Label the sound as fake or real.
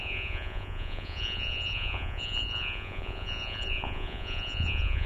fake